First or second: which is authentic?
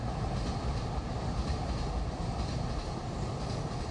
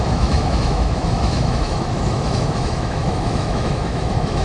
first